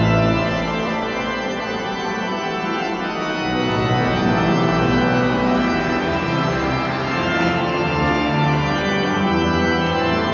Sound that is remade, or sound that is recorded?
recorded